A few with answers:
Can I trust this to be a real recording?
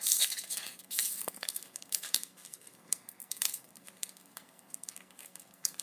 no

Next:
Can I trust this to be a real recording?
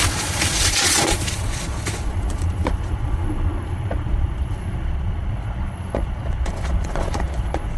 no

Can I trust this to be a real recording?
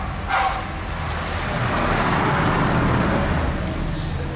yes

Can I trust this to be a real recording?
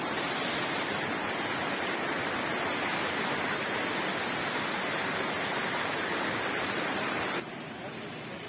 yes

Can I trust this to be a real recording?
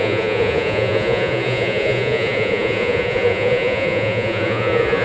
no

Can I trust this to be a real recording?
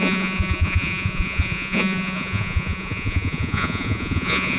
no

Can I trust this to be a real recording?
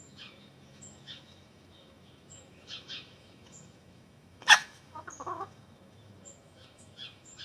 no